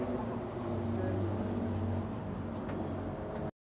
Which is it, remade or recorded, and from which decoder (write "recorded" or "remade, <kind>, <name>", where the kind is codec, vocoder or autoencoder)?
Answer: recorded